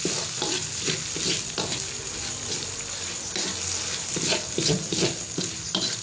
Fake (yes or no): no